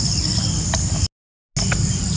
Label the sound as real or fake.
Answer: real